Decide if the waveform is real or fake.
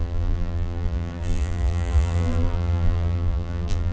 fake